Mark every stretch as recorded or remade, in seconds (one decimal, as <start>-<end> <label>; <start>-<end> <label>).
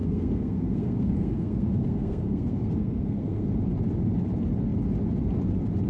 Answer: 0.0-3.5 remade; 3.5-5.9 recorded